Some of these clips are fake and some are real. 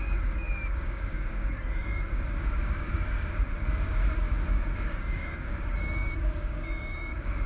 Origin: fake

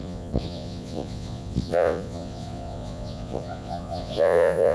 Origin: fake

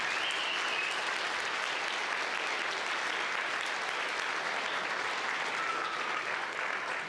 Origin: real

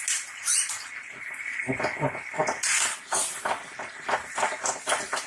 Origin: real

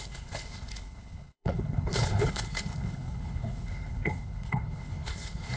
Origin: fake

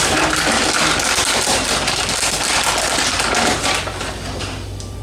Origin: real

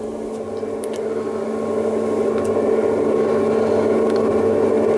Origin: real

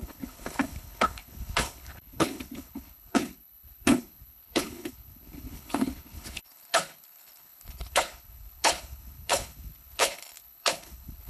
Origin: fake